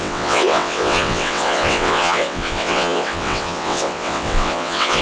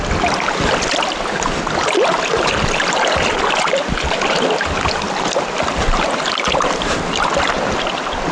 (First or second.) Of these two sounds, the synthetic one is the first